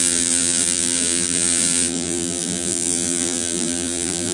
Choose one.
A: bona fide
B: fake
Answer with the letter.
B